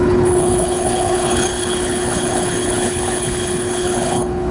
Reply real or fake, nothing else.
fake